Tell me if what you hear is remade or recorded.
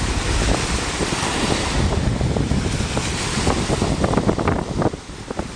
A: recorded